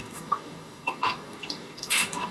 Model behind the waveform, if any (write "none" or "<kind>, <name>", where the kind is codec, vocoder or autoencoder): codec, DAC